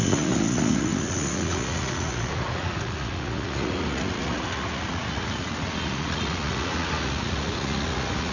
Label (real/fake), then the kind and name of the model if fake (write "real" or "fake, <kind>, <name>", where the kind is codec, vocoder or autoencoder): fake, vocoder, Vocos